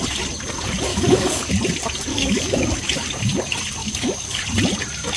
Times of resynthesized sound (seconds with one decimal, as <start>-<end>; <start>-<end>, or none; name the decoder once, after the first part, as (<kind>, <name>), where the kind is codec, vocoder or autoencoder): 0.9-1.5 (codec, DAC); 2.1-2.7; 3.8-4.4